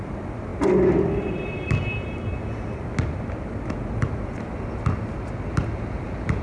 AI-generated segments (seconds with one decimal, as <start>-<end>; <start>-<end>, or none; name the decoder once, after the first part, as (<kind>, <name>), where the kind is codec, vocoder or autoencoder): none